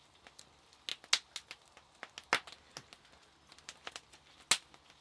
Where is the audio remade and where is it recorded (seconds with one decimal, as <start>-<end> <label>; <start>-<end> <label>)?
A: 0.0-5.0 recorded